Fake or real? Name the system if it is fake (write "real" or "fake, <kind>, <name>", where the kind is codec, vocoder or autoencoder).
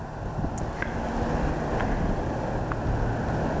real